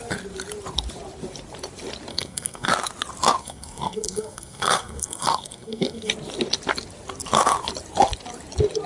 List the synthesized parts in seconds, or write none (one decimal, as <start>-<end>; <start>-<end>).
2.1-2.7; 3.4-6.1